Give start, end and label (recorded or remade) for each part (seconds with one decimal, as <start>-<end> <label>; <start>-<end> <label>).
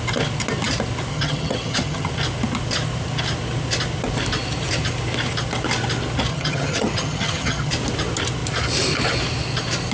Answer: 0.0-1.1 recorded; 1.1-2.1 remade; 2.1-6.3 recorded; 6.3-7.7 remade; 7.7-9.9 recorded